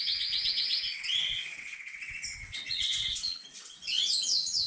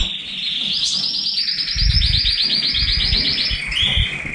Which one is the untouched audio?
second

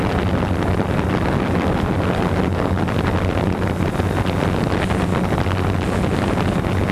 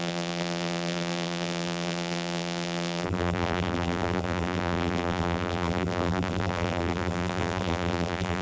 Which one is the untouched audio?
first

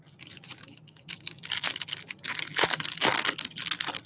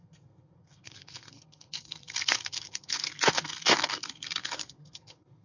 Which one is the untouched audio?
first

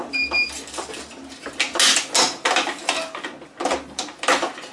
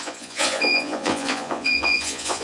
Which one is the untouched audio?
first